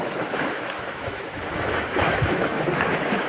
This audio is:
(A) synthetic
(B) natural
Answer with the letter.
A